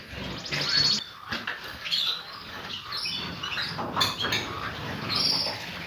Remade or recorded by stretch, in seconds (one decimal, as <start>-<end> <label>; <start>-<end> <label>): 0.0-1.7 recorded; 1.7-2.7 remade; 2.7-5.9 recorded